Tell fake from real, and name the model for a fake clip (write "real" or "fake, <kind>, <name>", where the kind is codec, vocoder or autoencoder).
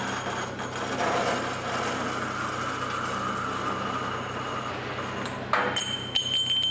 real